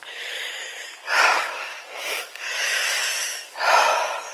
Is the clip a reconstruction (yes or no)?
yes